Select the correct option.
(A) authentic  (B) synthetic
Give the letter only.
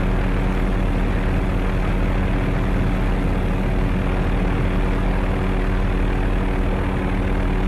A